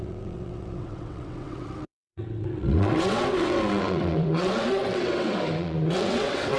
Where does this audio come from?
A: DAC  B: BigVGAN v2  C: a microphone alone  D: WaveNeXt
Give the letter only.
D